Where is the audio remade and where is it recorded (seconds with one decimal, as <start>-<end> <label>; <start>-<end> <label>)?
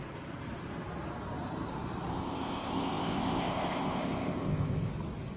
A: 0.0-2.1 recorded; 2.1-4.9 remade; 4.9-5.4 recorded